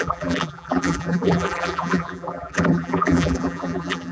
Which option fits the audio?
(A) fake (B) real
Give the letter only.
A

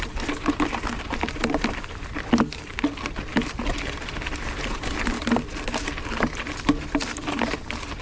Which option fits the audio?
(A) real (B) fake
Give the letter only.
A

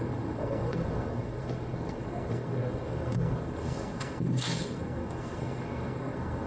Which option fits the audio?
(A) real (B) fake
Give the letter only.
B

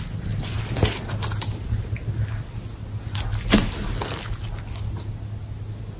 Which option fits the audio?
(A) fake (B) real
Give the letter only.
B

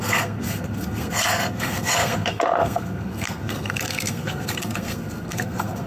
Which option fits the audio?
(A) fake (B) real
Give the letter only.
A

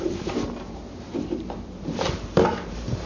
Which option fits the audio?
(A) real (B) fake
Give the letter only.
B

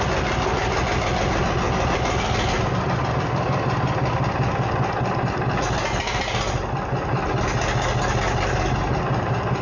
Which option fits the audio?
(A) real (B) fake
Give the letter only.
A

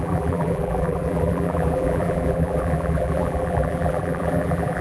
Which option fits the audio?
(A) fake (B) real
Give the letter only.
A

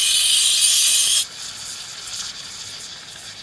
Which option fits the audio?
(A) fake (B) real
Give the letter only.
B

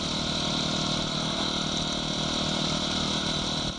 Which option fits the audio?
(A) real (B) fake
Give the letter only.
A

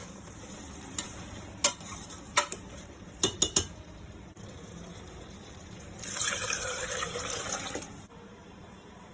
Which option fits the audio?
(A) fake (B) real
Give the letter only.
A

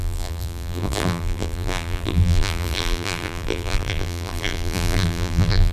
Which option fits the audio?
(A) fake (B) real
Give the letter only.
A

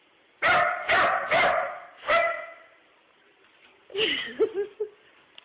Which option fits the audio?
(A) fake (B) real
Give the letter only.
B